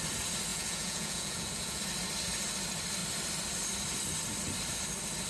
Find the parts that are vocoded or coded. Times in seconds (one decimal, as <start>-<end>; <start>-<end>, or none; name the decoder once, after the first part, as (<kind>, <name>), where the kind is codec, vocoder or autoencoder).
0.5-1.8 (vocoder, Vocos)